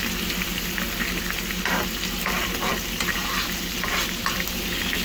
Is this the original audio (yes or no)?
yes